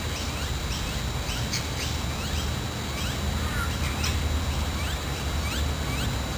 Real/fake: real